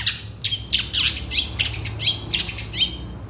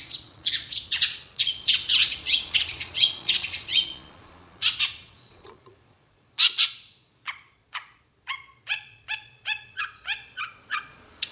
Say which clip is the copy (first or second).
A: second